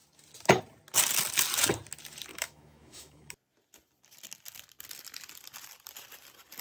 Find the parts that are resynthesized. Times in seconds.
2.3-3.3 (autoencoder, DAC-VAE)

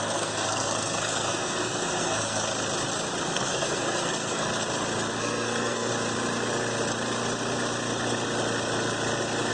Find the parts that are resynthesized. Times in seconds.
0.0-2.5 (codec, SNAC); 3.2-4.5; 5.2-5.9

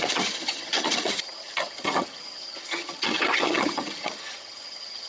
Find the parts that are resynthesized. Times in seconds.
0.0-5.1 (vocoder, HiFi-GAN)